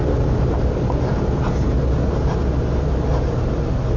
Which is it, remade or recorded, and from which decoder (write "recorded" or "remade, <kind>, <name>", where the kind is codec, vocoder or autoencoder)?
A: recorded